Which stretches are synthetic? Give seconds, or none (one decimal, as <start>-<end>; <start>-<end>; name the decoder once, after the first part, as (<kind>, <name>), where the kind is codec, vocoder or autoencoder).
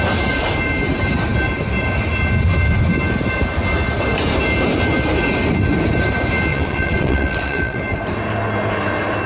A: 6.5-7.8 (vocoder, WaveNeXt)